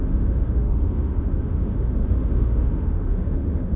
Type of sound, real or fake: fake